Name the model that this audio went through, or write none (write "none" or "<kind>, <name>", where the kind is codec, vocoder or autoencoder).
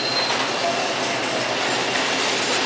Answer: none